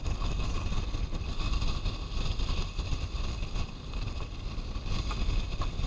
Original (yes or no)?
no